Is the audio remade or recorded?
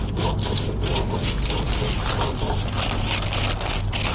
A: recorded